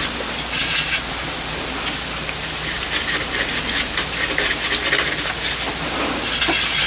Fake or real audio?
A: real